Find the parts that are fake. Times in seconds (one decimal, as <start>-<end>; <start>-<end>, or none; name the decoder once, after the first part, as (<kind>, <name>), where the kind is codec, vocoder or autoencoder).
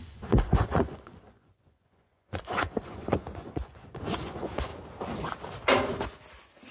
0.0-4.7 (vocoder, Vocos)